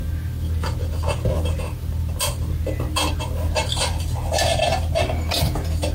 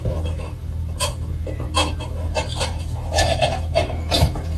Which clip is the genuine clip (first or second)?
first